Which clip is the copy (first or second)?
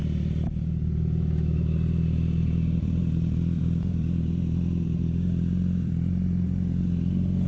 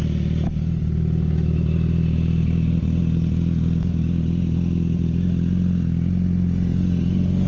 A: first